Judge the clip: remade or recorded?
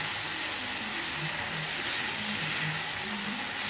recorded